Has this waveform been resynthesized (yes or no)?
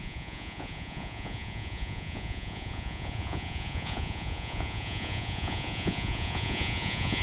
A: yes